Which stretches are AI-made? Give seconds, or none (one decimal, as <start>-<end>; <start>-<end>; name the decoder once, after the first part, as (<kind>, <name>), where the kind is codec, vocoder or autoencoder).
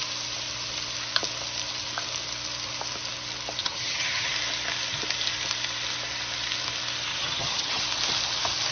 3.6-4.3 (vocoder, HiFi-GAN); 7.1-7.8